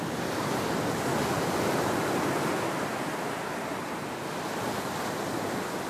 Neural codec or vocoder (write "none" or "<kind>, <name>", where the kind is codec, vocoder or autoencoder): none